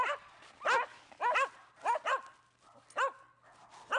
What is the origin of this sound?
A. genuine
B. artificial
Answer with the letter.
A